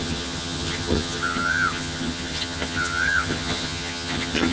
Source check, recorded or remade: remade